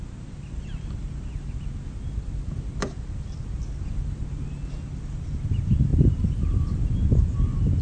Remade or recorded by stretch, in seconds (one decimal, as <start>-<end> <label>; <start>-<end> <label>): 0.0-5.9 recorded; 5.9-6.9 remade; 6.9-7.8 recorded